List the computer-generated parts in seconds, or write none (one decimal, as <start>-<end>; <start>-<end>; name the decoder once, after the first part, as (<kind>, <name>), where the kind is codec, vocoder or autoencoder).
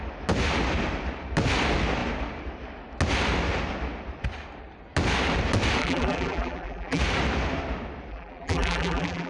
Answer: 5.8-7.0 (vocoder, BigVGAN v2); 8.1-9.3